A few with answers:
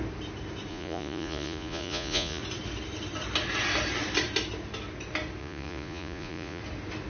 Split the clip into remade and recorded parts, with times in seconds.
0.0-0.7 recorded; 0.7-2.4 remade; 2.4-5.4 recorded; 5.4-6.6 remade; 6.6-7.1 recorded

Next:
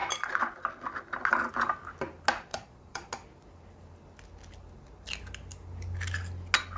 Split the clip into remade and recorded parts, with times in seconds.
0.0-2.5 recorded; 2.5-3.1 remade; 3.1-6.8 recorded